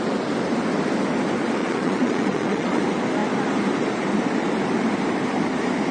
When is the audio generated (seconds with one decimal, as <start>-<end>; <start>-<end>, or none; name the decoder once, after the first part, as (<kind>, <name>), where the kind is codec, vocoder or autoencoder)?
1.6-2.8 (vocoder, Vocos)